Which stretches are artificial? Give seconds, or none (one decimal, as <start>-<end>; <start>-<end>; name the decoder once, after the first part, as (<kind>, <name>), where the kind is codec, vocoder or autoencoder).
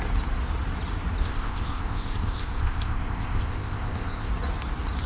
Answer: 1.2-4.3 (codec, ZipCodec)